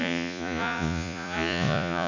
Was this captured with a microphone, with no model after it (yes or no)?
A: no